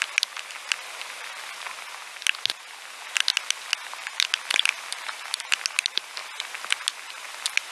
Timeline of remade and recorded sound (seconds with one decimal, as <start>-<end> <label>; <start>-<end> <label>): 0.0-7.7 recorded